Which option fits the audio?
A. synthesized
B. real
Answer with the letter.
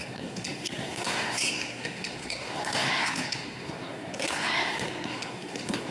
A